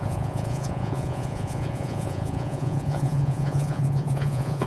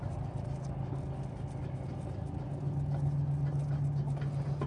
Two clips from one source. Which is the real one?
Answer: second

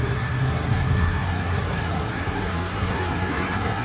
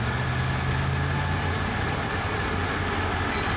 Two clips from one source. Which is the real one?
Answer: second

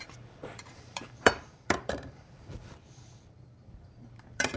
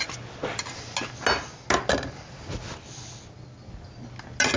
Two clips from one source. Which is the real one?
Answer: second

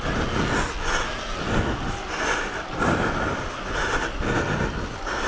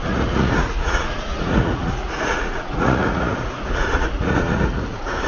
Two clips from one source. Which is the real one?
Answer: first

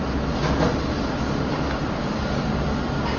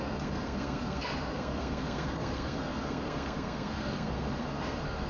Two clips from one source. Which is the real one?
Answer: first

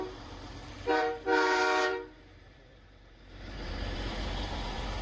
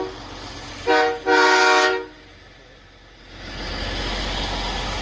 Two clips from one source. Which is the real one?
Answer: second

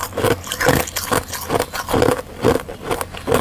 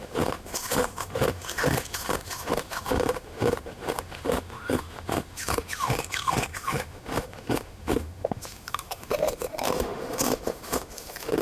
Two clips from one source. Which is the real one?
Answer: first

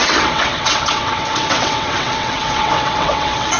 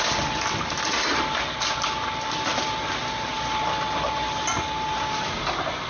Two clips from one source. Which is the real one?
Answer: second